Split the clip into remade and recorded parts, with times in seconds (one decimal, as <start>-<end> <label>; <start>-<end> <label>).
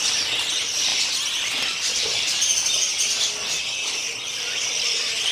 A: 0.0-0.9 recorded; 0.9-2.9 remade; 2.9-5.3 recorded